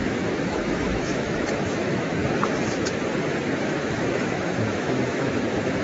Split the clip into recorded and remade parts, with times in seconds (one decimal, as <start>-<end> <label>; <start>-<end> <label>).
0.0-2.2 remade; 2.2-3.6 recorded; 3.6-5.8 remade